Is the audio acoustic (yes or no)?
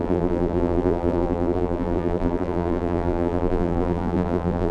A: no